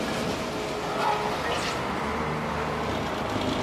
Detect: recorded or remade recorded